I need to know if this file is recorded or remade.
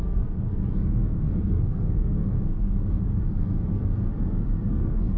remade